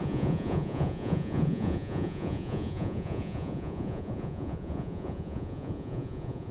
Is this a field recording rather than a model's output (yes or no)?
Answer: no